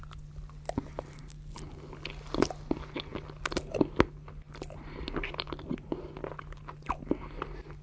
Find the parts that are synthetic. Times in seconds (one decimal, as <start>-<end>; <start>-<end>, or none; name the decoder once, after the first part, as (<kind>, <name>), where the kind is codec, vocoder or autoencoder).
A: none

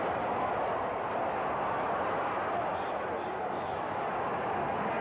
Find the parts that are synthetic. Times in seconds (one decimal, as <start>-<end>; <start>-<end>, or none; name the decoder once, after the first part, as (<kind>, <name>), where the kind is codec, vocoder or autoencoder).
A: 3.4-4.1 (codec, DAC)

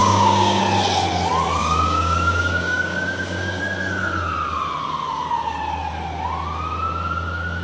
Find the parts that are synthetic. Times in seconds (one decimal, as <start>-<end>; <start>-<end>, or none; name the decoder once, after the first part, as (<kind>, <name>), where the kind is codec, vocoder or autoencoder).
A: 0.0-0.6 (codec, DAC); 1.6-3.6

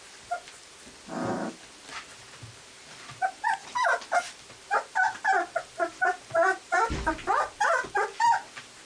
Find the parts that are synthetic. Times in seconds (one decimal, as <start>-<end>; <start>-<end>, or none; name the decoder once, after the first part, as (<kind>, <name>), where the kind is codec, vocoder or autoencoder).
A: none